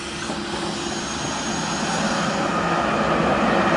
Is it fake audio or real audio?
real